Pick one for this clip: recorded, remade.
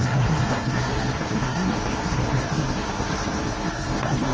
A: remade